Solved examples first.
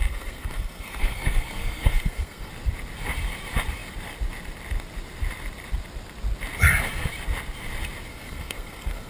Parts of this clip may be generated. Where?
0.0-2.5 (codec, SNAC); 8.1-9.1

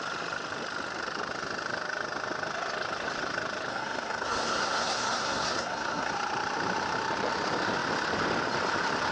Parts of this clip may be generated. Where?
3.7-6.1 (codec, SNAC)